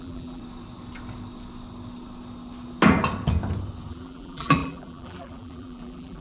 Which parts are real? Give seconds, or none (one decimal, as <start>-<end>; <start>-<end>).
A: 0.4-3.9